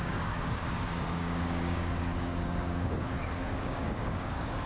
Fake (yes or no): yes